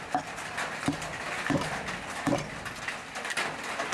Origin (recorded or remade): recorded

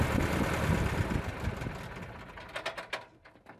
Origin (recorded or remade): recorded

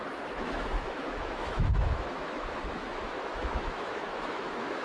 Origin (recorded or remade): remade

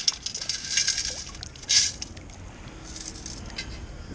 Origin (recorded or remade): recorded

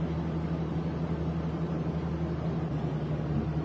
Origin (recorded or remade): recorded